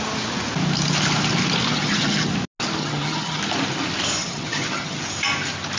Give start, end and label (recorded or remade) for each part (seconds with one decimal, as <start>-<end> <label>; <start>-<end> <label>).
0.0-1.7 recorded; 1.7-2.3 remade; 2.3-2.8 recorded; 2.8-3.4 remade; 3.4-4.2 recorded; 4.2-5.0 remade; 5.0-5.8 recorded